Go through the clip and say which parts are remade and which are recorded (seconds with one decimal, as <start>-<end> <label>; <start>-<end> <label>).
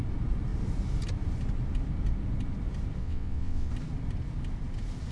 0.0-3.0 recorded; 3.0-3.7 remade; 3.7-5.1 recorded